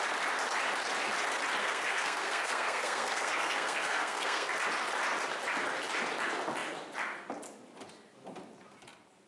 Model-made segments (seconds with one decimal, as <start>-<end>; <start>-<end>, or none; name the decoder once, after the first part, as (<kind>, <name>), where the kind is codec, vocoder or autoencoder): 1.6-4.5 (codec, SNAC)